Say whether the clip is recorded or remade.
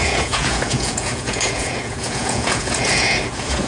remade